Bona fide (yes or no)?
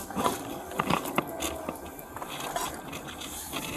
yes